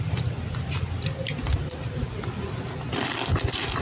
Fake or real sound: real